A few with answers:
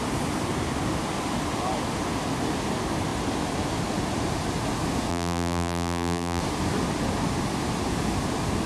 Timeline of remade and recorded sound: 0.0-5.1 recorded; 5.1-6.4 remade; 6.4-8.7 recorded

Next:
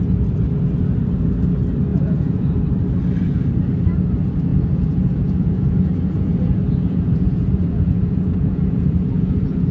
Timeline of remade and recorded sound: 0.0-1.9 recorded; 1.9-2.6 remade; 2.6-4.5 recorded; 4.5-9.7 remade

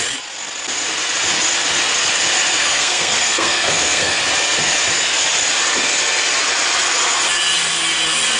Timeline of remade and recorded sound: 0.0-2.6 recorded; 2.6-4.2 remade; 4.2-8.4 recorded

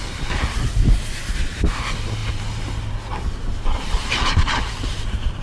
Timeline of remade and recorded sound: 0.0-5.4 recorded

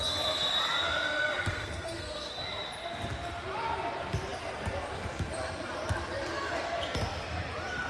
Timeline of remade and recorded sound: 0.0-1.5 recorded; 1.5-2.3 remade; 2.3-7.9 recorded

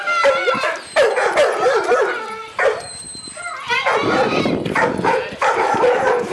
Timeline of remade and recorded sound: 0.0-6.3 recorded

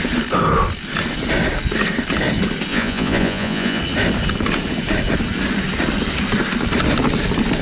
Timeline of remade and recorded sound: 0.0-2.7 recorded; 2.7-3.8 remade; 3.8-7.6 recorded